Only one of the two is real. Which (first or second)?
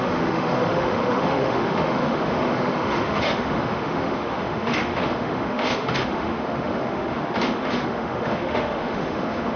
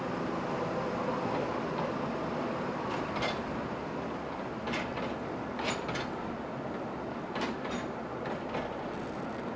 second